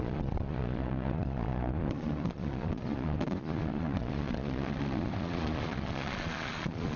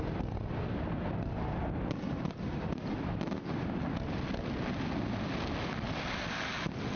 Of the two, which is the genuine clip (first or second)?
second